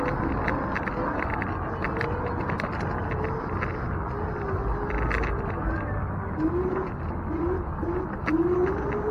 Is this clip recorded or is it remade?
recorded